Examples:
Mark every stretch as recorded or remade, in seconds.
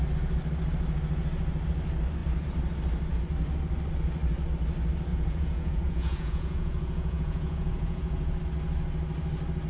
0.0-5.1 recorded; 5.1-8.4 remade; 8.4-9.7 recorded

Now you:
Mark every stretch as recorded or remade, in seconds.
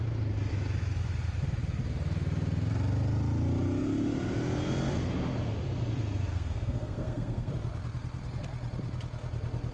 0.0-6.3 recorded; 6.3-7.5 remade; 7.5-9.7 recorded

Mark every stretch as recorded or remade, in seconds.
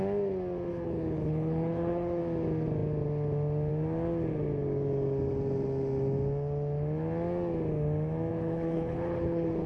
0.0-0.7 recorded; 0.7-2.2 remade; 2.2-8.3 recorded; 8.3-9.7 remade